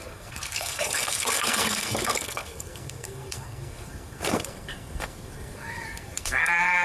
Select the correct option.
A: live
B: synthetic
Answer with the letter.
B